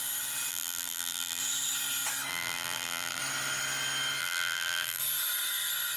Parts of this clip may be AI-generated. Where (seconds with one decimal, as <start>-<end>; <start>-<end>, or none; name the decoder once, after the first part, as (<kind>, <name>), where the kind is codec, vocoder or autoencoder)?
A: 0.5-1.4 (vocoder, BigVGAN v2); 2.3-3.2; 4.2-5.0